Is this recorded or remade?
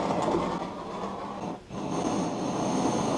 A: recorded